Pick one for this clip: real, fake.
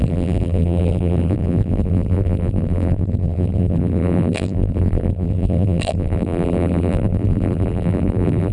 fake